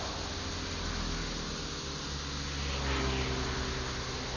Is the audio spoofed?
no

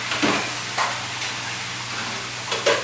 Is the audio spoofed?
no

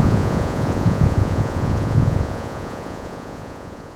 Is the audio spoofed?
yes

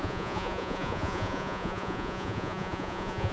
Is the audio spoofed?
yes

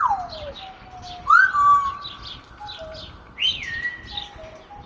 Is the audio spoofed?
no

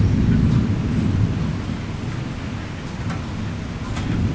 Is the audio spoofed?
no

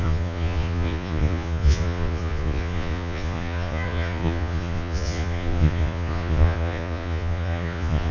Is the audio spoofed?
yes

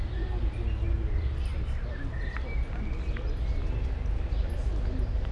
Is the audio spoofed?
no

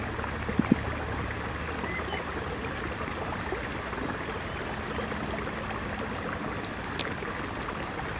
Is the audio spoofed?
no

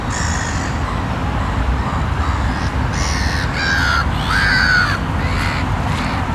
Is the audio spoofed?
no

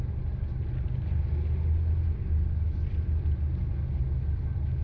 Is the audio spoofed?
no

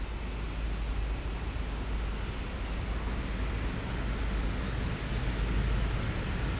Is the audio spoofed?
no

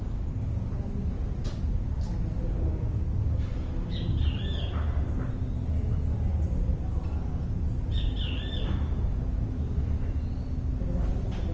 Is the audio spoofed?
no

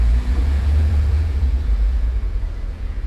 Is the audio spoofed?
yes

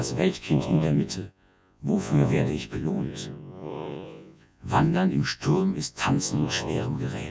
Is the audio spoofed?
yes